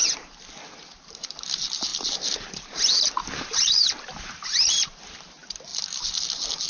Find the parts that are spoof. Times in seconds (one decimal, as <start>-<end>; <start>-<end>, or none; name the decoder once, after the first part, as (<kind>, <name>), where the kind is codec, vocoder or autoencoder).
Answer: 0.0-6.7 (vocoder, BigVGAN v2)